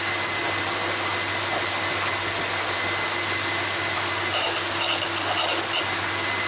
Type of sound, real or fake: real